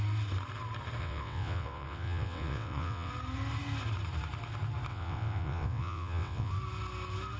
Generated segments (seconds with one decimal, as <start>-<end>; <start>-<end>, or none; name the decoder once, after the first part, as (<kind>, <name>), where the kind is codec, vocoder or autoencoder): 1.0-3.1 (vocoder, WaveNeXt); 4.9-6.5